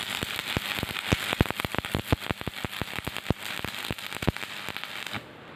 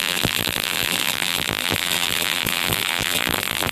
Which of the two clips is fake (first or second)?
second